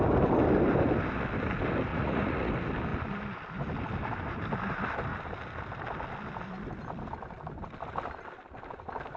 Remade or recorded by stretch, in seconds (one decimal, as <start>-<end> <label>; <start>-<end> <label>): 0.0-1.9 recorded; 1.9-2.5 remade; 2.5-9.2 recorded